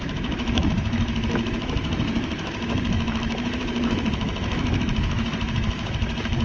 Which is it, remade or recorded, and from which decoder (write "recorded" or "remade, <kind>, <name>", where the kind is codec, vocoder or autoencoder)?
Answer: remade, autoencoder, DAC-VAE